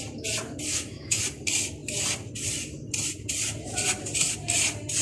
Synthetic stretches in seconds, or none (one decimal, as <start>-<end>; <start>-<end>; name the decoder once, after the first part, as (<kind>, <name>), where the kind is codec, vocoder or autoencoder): 0.7-1.2 (autoencoder, DAC-VAE)